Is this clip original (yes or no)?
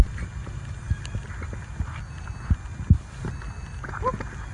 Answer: yes